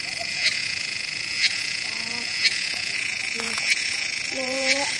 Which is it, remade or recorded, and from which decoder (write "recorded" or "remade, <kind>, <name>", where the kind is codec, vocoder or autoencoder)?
remade, vocoder, Vocos